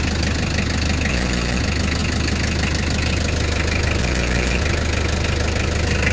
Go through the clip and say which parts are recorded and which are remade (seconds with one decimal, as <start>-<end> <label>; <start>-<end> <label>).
0.0-1.1 recorded; 1.1-1.6 remade; 1.6-4.0 recorded; 4.0-4.6 remade; 4.6-6.1 recorded